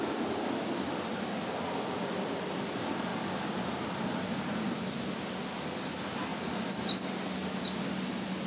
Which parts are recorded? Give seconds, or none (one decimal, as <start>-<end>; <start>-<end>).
0.0-8.5